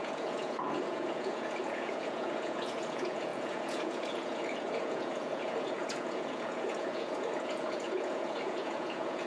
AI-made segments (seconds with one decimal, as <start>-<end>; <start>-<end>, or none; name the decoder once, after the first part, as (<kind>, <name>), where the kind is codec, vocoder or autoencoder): 0.0-9.3 (vocoder, Vocos)